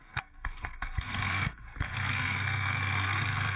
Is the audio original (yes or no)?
no